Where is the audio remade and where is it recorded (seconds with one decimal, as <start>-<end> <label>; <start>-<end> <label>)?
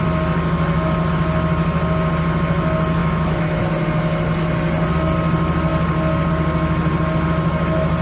0.0-3.0 recorded; 3.0-3.6 remade; 3.6-8.0 recorded